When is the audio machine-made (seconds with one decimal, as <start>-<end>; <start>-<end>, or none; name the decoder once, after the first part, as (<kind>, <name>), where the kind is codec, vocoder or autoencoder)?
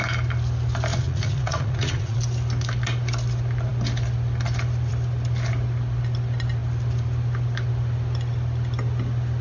0.9-2.2 (vocoder, Vocos)